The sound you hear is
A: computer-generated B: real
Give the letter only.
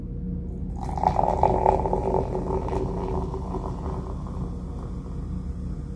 B